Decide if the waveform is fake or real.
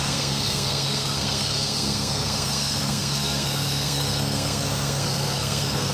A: fake